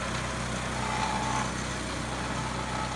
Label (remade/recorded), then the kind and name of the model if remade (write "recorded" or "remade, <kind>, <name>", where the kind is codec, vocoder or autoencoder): recorded